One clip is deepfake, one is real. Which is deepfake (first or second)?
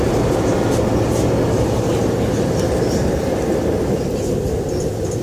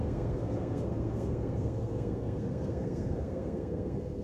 second